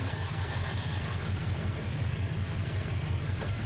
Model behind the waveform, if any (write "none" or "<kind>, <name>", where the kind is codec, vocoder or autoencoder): codec, SNAC